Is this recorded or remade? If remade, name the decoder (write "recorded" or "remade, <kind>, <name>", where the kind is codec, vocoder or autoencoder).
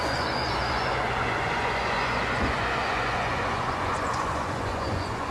remade, vocoder, Vocos